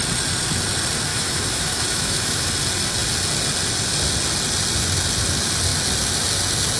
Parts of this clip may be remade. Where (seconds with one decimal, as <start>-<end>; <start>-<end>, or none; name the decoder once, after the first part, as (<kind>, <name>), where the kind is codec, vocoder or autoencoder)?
1.1-2.5 (autoencoder, DAC-VAE)